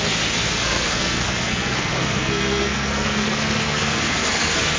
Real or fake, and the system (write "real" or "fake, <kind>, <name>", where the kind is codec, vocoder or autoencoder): fake, codec, SNAC